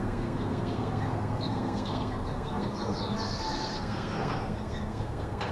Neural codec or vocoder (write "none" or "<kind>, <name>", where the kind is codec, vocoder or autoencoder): codec, SNAC